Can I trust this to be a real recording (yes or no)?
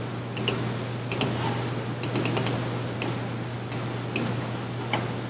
yes